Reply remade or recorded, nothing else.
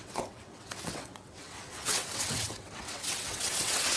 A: remade